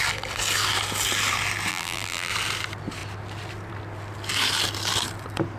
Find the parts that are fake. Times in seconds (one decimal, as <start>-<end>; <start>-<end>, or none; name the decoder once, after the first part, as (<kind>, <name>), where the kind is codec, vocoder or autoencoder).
1.7-2.3 (vocoder, BigVGAN v2)